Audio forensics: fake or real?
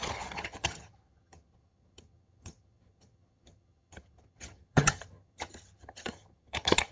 fake